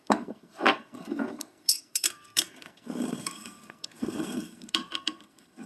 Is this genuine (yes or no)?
no